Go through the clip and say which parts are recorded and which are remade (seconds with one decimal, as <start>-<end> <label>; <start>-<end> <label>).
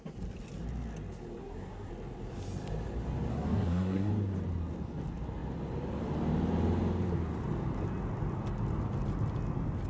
0.0-1.4 recorded; 1.4-1.9 remade; 1.9-3.3 recorded; 3.3-4.1 remade; 4.1-9.9 recorded